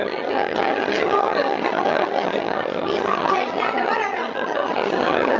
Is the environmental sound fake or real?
fake